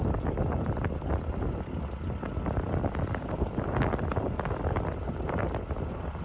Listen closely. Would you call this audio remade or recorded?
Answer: recorded